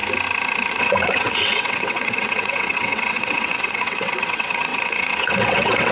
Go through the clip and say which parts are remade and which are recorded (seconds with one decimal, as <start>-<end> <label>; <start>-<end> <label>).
0.0-0.7 recorded; 0.7-5.9 remade